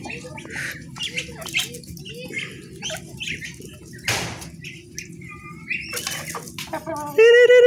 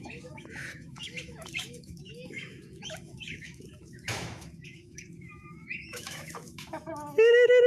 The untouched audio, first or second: first